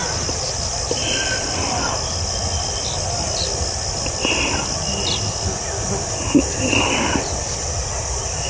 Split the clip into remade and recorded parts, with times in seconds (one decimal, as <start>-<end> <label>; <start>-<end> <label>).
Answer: 0.0-8.5 recorded